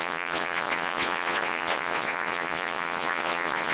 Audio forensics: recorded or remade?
remade